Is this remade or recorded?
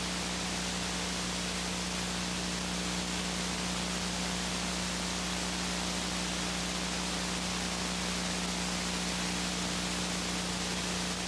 recorded